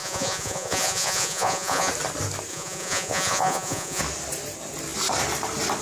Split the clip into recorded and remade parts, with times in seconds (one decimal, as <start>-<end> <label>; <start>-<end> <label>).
0.0-1.9 remade; 1.9-2.5 recorded; 2.5-4.0 remade; 4.0-5.8 recorded